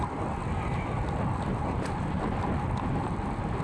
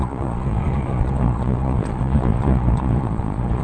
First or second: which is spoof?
second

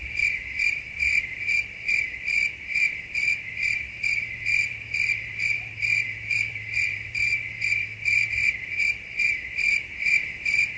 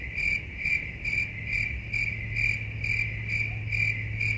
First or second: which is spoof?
first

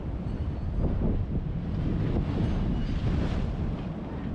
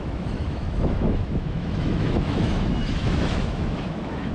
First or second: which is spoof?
second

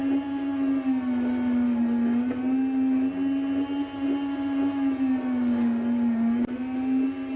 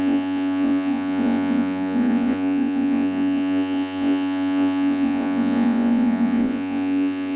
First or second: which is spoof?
second